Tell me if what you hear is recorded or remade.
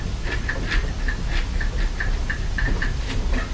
recorded